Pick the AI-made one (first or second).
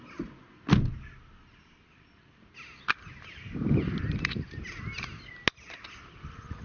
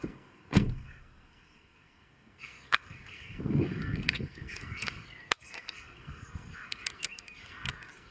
second